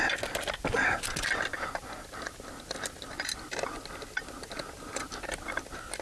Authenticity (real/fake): real